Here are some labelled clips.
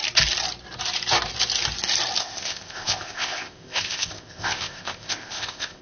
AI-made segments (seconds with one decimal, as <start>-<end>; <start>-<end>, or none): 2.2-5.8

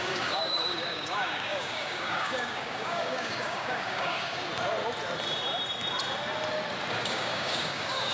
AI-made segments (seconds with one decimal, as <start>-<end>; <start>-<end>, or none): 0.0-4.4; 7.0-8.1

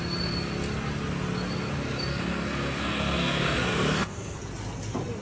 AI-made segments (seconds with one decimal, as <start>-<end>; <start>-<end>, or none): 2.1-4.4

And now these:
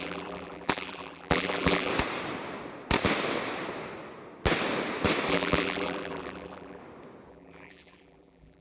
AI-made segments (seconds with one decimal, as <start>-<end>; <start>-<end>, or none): 0.0-1.9; 5.3-6.8; 7.3-8.6